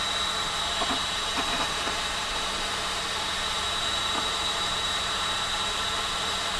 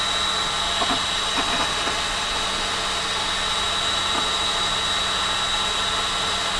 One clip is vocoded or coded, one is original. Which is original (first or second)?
second